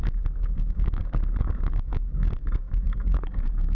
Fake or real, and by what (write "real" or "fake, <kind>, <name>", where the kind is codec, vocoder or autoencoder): fake, codec, DAC